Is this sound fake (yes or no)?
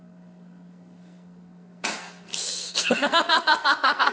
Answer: yes